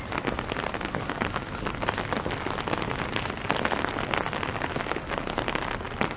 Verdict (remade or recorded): recorded